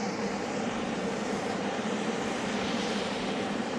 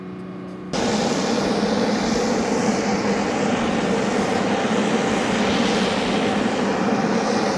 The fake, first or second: first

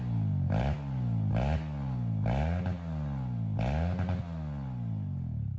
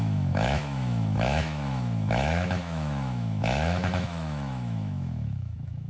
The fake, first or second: second